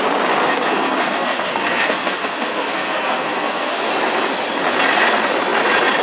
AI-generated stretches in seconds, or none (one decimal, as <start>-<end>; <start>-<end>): 0.4-3.9